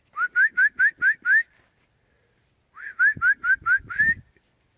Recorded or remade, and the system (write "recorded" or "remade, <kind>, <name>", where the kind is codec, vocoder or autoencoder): recorded